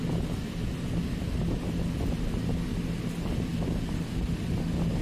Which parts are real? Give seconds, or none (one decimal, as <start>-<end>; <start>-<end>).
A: 0.0-5.0